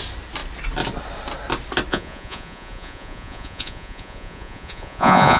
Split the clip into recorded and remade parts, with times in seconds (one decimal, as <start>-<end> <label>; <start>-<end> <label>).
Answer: 0.0-1.9 recorded; 1.9-5.4 remade